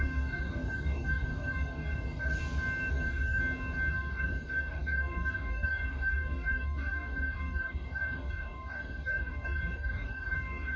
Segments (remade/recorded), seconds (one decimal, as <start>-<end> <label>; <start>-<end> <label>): 0.0-2.4 remade; 2.4-2.9 recorded; 2.9-3.4 remade; 3.4-3.9 recorded; 3.9-10.8 remade